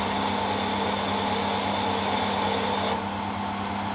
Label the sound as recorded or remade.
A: recorded